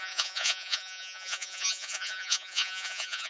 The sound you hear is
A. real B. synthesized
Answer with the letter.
B